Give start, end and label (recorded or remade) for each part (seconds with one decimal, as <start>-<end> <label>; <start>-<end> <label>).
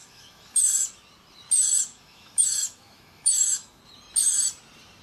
0.0-0.6 remade; 0.6-1.9 recorded; 1.9-3.8 remade; 3.8-5.0 recorded